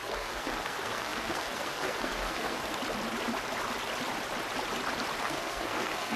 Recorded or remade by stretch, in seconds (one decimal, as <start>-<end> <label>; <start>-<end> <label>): 0.0-2.8 remade; 2.8-5.2 recorded; 5.2-6.2 remade